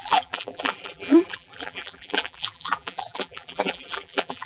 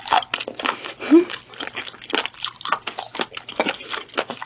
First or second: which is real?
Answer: second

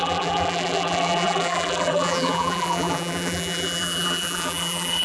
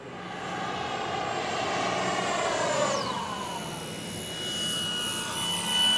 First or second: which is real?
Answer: second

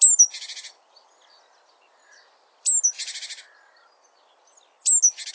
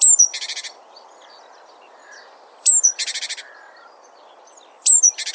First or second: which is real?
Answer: first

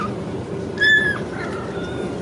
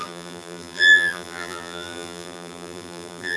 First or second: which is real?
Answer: first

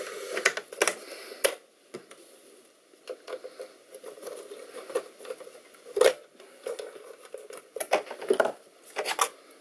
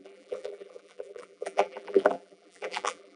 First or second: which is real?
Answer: first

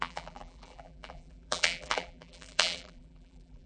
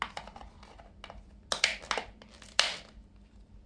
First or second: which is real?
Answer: second